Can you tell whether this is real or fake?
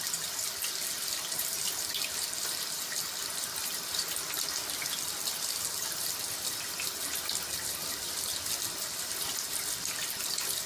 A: real